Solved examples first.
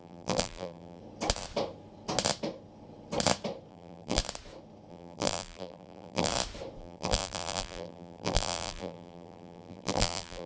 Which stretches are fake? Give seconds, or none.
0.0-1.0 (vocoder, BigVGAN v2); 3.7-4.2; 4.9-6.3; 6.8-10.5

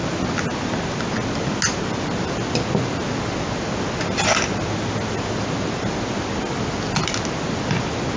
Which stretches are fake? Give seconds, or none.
none

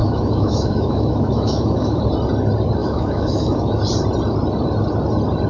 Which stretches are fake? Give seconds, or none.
0.0-2.0 (autoencoder, DAC-VAE); 2.8-3.8

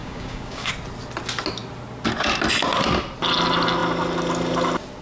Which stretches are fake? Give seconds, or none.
0.0-0.7 (codec, DAC)

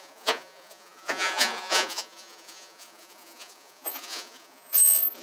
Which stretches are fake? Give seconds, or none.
0.0-5.2 (vocoder, Vocos)